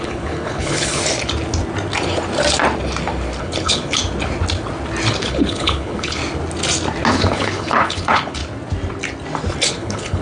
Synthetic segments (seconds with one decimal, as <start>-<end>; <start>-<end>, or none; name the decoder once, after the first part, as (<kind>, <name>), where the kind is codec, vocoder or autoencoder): 0.0-1.0 (codec, HILCodec); 3.4-4.0; 5.2-6.2; 7.1-8.4; 9.7-10.2